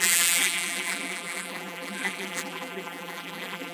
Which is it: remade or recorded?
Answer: remade